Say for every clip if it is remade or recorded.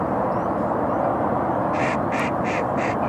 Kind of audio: remade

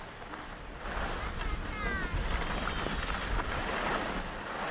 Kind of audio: recorded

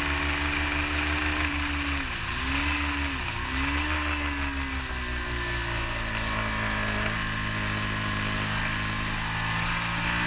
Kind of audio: recorded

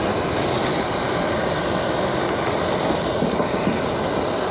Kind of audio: recorded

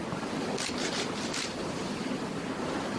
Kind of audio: recorded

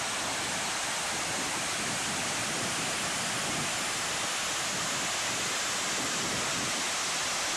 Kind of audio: recorded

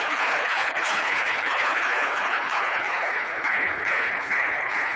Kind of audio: remade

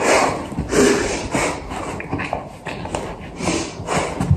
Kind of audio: recorded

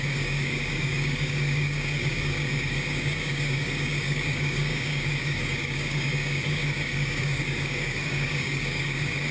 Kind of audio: remade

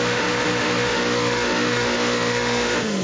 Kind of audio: remade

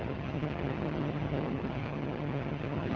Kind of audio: remade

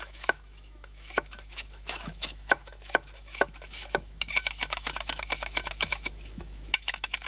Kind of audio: remade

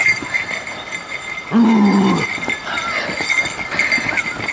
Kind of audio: recorded